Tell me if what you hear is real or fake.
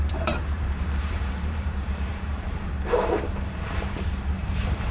fake